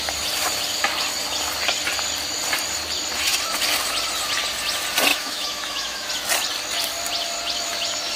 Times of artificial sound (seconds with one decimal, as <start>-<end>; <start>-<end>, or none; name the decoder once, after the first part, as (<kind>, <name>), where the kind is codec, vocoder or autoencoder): 5.1-6.1 (autoencoder, DAC-VAE)